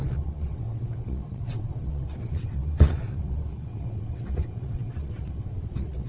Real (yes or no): no